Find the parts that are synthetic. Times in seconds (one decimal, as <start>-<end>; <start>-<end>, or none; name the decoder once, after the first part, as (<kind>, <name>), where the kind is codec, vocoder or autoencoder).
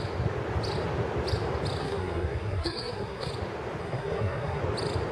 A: 1.8-3.3 (codec, SNAC); 3.8-4.6